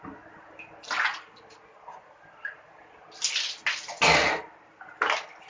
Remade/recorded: recorded